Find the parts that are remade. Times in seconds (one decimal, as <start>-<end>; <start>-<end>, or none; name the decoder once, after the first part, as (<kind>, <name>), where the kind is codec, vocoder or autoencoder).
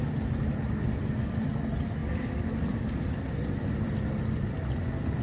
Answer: none